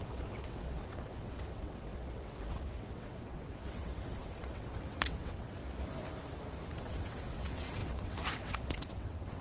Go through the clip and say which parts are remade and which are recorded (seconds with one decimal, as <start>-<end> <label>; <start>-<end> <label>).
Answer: 0.0-5.6 remade; 5.6-6.8 recorded; 6.8-9.4 remade